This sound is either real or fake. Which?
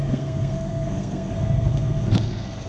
fake